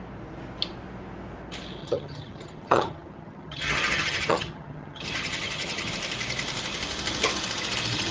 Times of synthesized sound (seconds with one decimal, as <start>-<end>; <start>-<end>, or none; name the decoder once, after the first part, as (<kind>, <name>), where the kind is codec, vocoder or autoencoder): 1.8-5.9 (vocoder, HiFi-GAN)